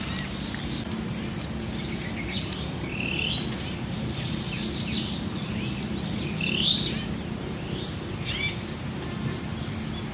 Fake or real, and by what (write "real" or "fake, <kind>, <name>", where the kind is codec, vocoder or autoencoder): real